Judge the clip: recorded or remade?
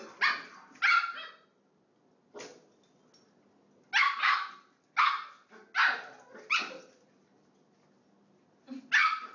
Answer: recorded